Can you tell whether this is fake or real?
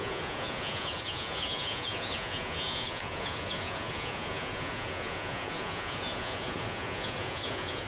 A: fake